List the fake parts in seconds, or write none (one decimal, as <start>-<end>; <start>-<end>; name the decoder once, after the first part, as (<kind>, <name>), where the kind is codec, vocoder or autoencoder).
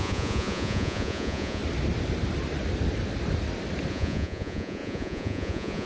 0.0-1.6 (vocoder, Vocos); 3.9-5.9